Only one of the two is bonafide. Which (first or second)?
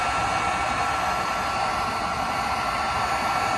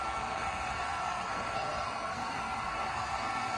first